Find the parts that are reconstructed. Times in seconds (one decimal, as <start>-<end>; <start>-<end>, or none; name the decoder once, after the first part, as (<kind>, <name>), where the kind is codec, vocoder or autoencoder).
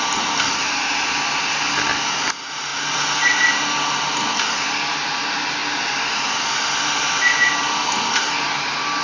none